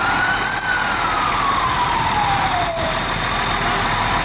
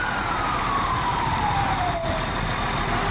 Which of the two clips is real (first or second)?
first